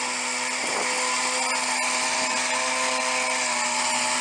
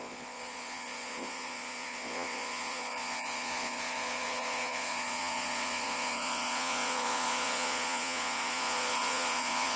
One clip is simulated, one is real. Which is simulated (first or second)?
second